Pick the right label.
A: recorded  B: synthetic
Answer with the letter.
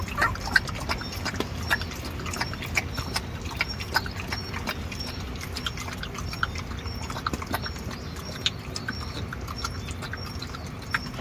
A